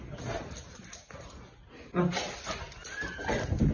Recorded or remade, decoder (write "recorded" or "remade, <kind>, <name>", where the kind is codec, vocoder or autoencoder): recorded